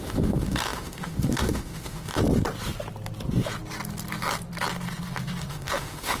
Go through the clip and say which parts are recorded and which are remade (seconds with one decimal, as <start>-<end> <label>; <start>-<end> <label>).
0.0-2.2 remade; 2.2-5.5 recorded; 5.5-6.2 remade